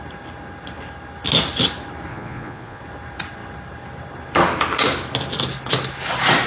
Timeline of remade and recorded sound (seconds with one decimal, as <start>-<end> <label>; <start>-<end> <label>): 0.0-2.1 recorded; 2.1-2.8 remade; 2.8-6.5 recorded